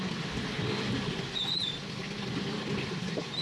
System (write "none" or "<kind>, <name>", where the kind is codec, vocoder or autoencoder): none